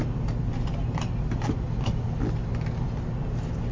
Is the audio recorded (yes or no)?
yes